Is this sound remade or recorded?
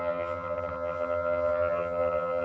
remade